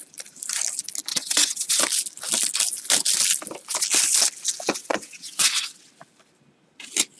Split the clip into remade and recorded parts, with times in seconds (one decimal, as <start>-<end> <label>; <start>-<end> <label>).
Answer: 0.0-1.1 recorded; 1.1-1.8 remade; 1.8-4.8 recorded; 4.8-5.9 remade; 5.9-7.2 recorded